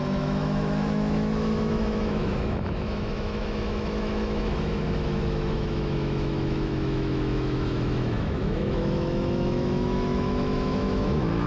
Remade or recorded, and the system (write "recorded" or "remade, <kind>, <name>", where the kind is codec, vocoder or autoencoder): remade, autoencoder, DAC-VAE